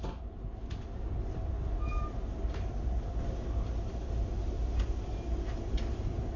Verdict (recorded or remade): recorded